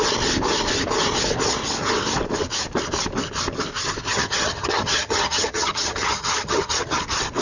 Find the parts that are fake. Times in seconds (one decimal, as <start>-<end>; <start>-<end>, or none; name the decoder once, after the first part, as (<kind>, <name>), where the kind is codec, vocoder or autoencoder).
4.1-7.0 (vocoder, HiFi-GAN)